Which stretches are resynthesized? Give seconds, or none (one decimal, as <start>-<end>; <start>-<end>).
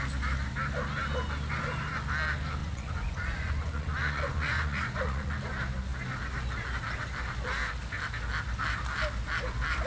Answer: 2.6-5.5